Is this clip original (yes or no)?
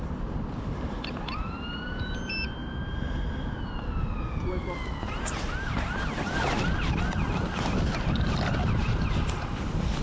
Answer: yes